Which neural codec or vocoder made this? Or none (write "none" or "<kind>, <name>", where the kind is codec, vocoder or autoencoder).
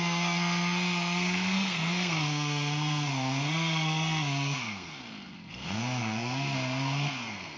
codec, SNAC